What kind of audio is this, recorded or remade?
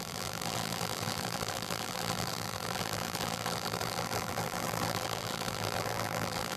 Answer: remade